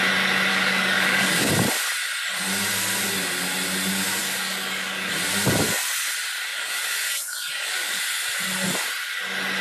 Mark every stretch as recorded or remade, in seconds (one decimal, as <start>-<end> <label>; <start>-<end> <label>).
0.0-0.5 recorded; 0.5-1.5 remade; 1.5-4.2 recorded; 4.2-5.1 remade; 5.1-6.5 recorded; 6.5-8.0 remade; 8.0-9.6 recorded